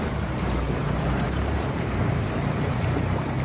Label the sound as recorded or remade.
remade